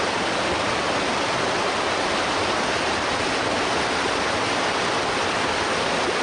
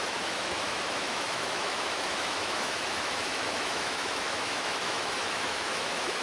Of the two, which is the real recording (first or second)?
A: first